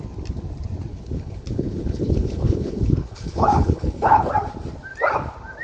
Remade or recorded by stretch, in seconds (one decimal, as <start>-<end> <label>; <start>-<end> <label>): 0.0-0.9 recorded; 0.9-4.3 remade; 4.3-5.6 recorded